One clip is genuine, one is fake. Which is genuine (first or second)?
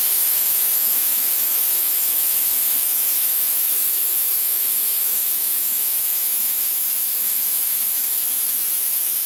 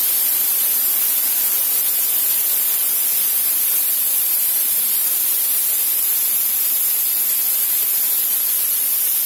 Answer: second